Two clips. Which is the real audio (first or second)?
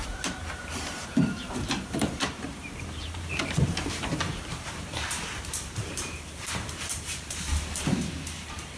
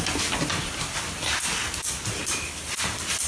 second